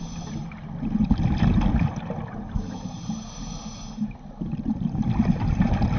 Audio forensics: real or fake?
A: real